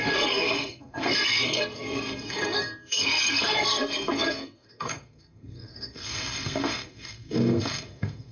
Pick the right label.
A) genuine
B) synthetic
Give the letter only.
B